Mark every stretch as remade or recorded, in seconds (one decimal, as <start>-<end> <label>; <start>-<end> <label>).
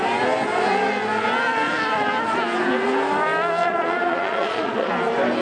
0.0-3.6 recorded; 3.6-4.9 remade; 4.9-5.4 recorded